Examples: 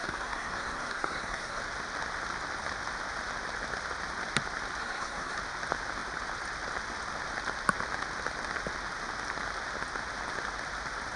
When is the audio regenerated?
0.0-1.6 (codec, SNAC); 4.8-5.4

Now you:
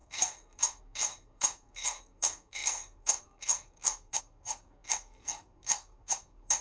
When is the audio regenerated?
0.0-6.6 (codec, SNAC)